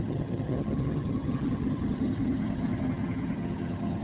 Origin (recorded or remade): remade